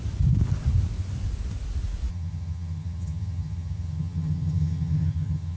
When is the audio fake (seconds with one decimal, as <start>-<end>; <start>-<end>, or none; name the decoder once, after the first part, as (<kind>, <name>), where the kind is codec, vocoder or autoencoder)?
2.1-5.6 (vocoder, HiFi-GAN)